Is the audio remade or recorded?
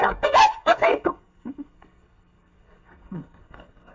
remade